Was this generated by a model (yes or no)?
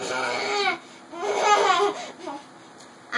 no